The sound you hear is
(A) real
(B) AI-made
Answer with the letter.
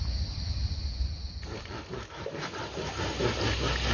A